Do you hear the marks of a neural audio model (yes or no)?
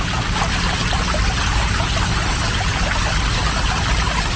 no